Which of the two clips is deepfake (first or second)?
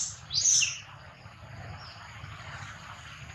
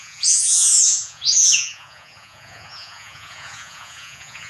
second